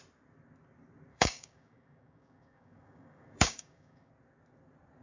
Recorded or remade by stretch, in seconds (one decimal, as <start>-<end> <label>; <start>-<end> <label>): 0.0-1.1 recorded; 1.1-4.1 remade; 4.1-5.0 recorded